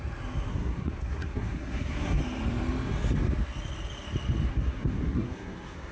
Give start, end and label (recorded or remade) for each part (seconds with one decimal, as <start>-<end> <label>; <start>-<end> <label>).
0.0-0.5 recorded; 0.5-2.2 remade; 2.2-4.5 recorded; 4.5-5.9 remade